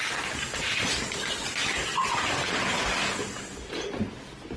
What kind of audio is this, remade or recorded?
recorded